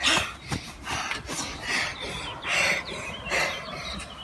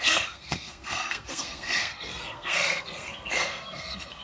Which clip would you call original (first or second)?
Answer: first